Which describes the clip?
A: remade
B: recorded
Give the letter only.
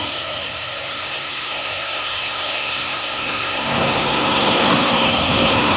A